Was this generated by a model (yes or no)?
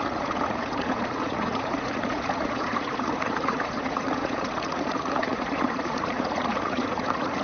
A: yes